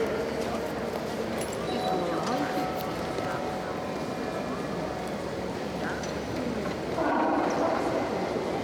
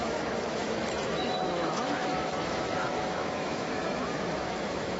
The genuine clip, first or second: first